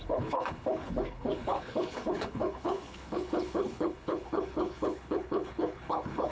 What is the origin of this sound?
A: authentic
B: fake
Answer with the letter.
B